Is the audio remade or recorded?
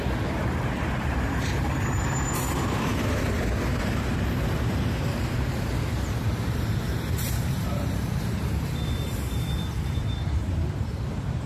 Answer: remade